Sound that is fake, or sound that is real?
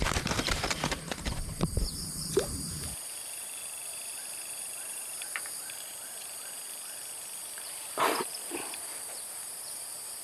fake